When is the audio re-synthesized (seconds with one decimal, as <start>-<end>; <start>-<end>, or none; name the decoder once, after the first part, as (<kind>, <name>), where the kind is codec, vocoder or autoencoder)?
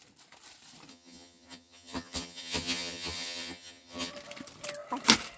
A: 0.9-4.1 (vocoder, HiFi-GAN)